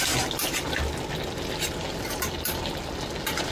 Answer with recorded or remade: recorded